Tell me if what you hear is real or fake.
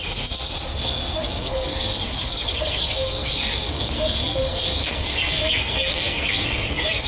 fake